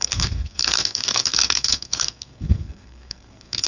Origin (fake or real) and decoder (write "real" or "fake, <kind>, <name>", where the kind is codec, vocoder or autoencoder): fake, codec, SNAC